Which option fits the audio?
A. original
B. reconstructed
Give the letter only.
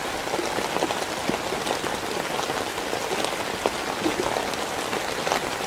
A